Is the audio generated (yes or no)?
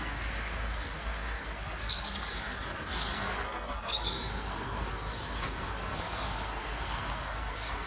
yes